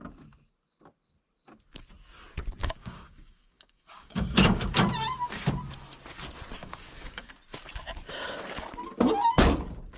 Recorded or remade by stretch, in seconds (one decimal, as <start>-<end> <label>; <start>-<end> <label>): 0.0-2.6 recorded; 2.6-4.7 remade; 4.7-6.6 recorded; 6.6-7.3 remade; 7.3-10.0 recorded